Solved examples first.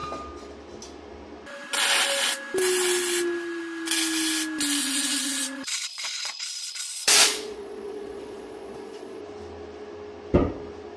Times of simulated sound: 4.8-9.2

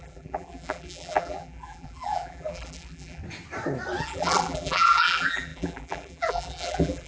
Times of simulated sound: 0.0-3.2; 4.0-7.1

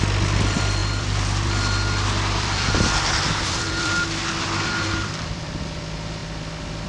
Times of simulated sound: 0.0-6.2

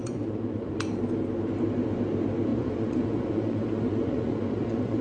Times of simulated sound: 0.0-0.7; 2.5-5.0

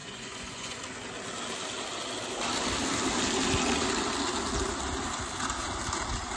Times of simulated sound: 0.0-0.8

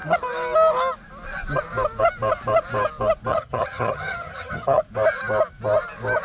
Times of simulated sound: 3.3-4.8

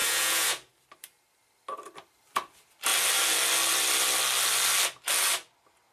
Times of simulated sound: 0.0-0.7

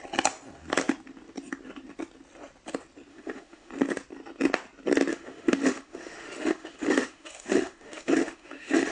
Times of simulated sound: 3.1-3.7; 5.1-8.9